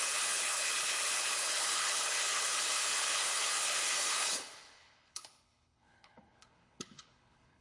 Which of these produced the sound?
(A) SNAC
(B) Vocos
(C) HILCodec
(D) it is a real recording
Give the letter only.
C